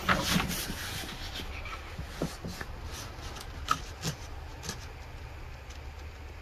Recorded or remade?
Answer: recorded